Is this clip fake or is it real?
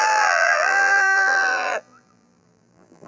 fake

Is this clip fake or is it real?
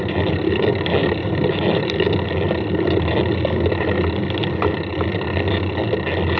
real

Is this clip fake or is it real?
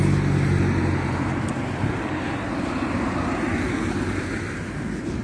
real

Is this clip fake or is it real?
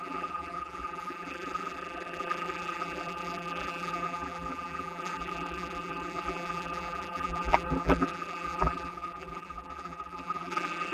fake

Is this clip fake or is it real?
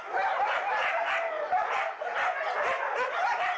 real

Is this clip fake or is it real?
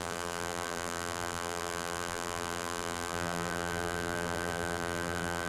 fake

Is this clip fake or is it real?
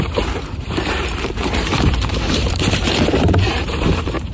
fake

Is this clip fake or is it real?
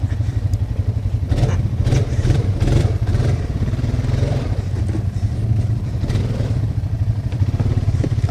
fake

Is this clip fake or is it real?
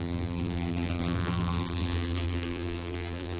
fake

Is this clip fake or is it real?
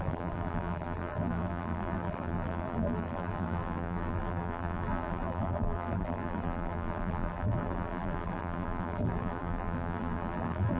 fake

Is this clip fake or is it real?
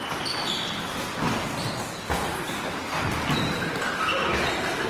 real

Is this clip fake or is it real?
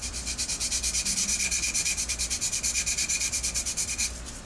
fake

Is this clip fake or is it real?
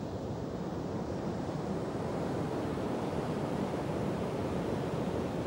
fake